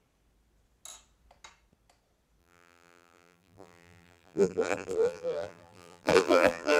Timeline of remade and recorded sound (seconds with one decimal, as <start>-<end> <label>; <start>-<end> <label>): 0.0-2.4 recorded; 2.4-6.8 remade